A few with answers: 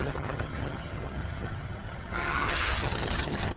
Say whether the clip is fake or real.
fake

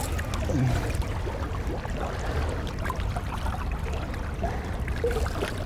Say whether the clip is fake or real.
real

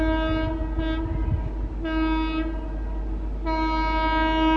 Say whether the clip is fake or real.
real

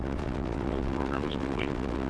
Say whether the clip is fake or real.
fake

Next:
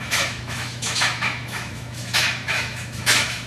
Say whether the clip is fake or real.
fake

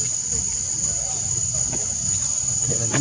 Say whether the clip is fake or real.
real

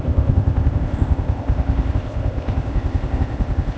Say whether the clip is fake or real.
fake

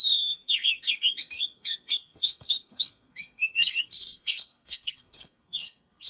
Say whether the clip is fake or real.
fake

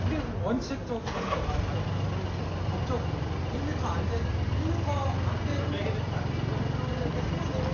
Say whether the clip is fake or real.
real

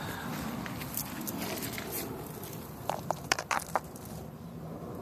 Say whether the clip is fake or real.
fake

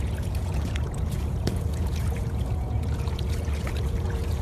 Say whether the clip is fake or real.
fake